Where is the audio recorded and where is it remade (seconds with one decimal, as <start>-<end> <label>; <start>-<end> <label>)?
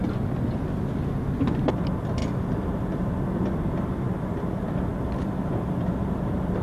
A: 0.0-2.2 recorded; 2.2-6.6 remade